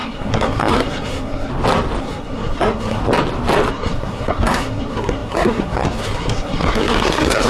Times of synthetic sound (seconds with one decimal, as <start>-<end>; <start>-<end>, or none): 0.0-1.5; 2.0-3.0; 3.7-7.5